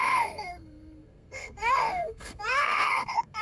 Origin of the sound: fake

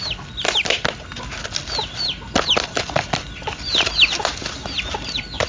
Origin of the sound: real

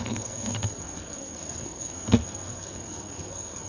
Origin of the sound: fake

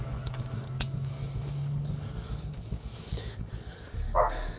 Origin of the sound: fake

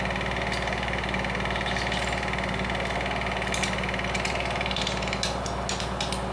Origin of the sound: real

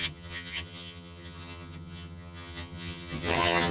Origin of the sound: fake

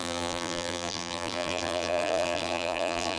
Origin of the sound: fake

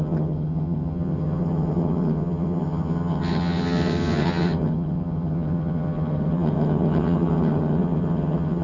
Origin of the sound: fake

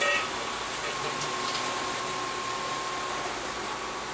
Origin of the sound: real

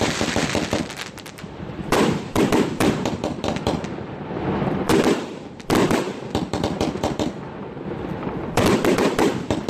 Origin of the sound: fake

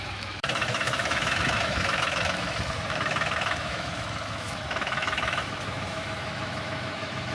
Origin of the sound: fake